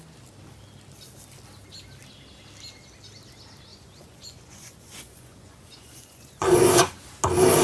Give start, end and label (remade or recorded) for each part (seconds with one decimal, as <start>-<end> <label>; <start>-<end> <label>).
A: 0.0-3.7 recorded; 3.7-6.9 remade; 6.9-7.6 recorded